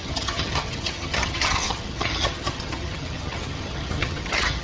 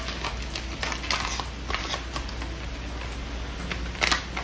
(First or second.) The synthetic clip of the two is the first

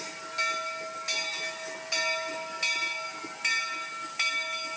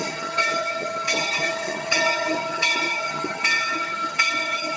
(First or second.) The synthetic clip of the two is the second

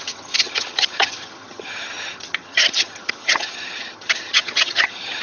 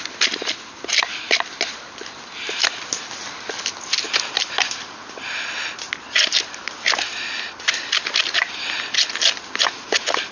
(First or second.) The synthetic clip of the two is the first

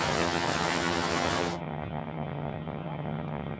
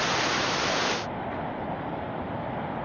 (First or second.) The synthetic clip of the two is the first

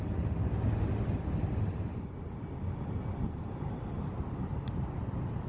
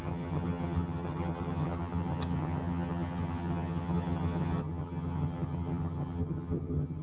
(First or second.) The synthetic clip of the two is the second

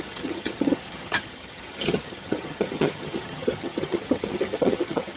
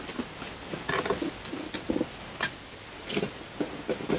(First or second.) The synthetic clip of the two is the first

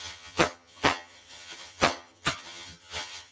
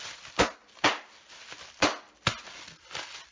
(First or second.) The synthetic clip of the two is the first